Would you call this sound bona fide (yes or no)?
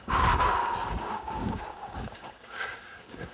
no